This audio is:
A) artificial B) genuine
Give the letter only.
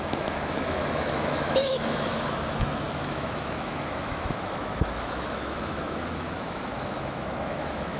A